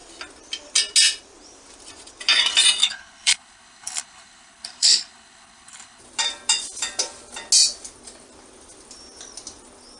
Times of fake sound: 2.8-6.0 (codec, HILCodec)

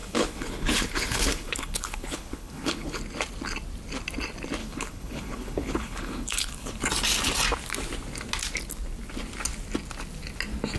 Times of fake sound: 0.0-3.0 (codec, HILCodec); 4.6-6.8